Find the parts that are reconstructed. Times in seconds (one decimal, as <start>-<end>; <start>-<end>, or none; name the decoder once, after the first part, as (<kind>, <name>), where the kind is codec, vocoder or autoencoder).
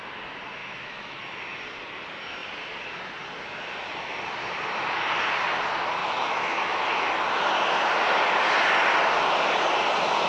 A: 0.6-1.2 (autoencoder, DAC-VAE); 6.0-7.1